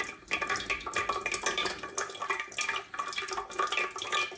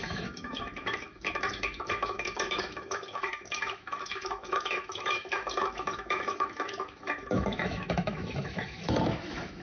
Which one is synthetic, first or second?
second